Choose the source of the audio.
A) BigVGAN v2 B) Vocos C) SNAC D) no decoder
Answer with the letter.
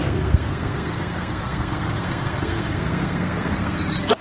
C